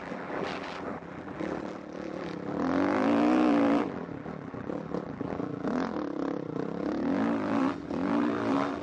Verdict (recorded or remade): remade